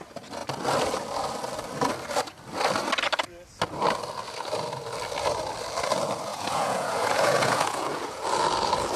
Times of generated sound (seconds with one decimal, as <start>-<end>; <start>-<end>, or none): 6.3-8.2